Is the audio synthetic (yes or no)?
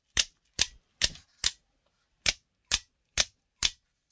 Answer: no